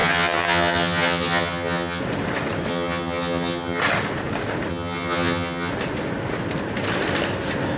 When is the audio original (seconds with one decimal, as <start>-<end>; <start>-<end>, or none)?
2.0-2.7; 3.8-4.7; 5.7-7.8